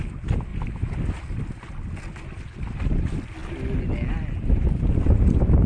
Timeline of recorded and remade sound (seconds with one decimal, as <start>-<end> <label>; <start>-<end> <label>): 0.0-5.7 recorded